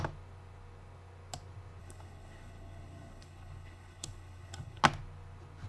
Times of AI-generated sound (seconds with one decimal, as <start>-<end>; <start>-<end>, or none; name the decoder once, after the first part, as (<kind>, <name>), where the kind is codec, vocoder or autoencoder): 1.8-4.8 (codec, HILCodec)

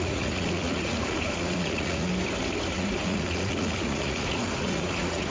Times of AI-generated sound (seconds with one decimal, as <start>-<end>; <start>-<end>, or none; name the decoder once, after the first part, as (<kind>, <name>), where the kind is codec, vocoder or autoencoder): 0.0-2.1 (vocoder, Vocos); 2.7-5.3

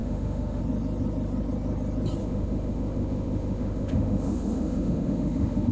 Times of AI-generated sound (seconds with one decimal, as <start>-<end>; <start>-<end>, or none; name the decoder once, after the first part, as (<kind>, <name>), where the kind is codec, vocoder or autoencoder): 0.0-0.6 (autoencoder, DAC-VAE); 2.2-5.7

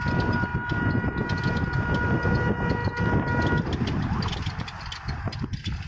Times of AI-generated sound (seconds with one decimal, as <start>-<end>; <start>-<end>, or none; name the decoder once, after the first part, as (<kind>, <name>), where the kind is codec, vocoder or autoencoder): none

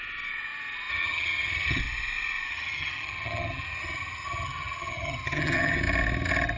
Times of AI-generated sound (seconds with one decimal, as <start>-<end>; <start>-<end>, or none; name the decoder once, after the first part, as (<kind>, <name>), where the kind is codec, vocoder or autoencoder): 0.9-1.8 (vocoder, HiFi-GAN); 2.5-5.8